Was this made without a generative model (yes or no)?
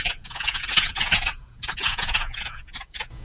no